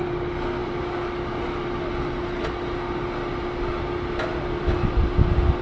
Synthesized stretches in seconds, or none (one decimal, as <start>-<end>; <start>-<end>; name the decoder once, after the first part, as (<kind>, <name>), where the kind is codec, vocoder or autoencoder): none